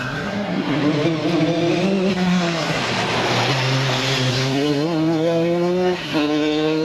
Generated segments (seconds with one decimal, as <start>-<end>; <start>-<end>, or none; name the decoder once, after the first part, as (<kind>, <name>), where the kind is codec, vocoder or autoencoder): 0.0-0.8 (codec, SNAC); 2.1-2.8; 4.3-6.8